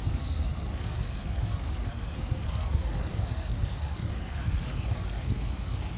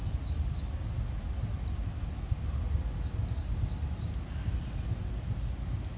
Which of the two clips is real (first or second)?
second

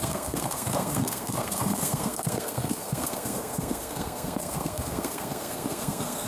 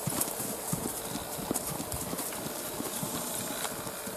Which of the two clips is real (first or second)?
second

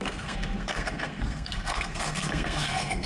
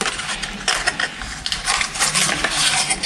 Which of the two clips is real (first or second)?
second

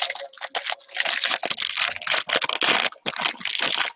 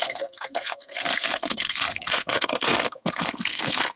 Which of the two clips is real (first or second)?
first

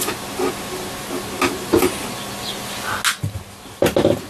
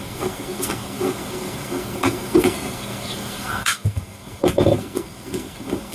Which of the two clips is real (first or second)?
first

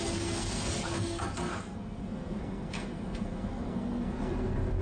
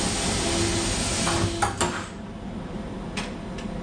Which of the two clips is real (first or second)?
second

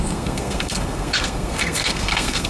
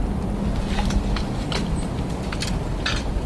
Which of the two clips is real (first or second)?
second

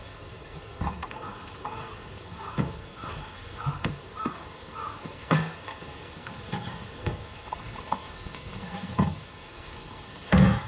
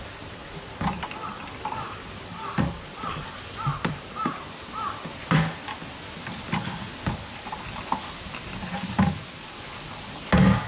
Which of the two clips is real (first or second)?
second